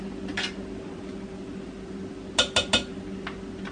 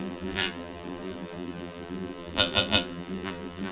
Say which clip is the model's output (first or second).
second